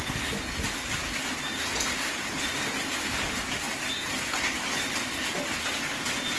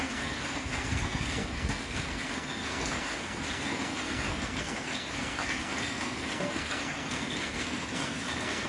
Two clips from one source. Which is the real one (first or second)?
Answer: first